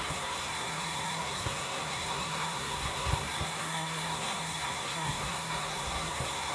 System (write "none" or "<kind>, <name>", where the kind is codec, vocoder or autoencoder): codec, SNAC